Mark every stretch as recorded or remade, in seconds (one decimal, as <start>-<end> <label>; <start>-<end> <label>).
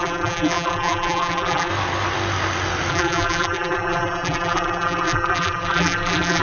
0.0-1.7 remade; 1.7-2.9 recorded; 2.9-6.4 remade